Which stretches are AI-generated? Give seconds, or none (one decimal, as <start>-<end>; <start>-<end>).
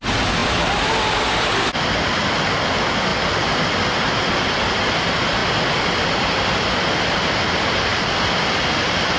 7.9-9.2